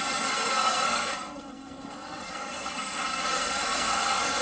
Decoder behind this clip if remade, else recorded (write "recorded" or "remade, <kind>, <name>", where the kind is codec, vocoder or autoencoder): remade, codec, SNAC